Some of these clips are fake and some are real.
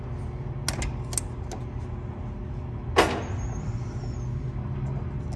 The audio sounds real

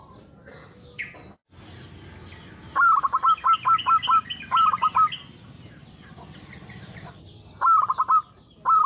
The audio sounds real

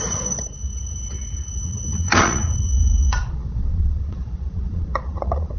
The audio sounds fake